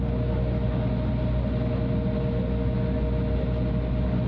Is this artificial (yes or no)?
no